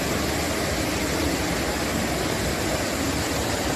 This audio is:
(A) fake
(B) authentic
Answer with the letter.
B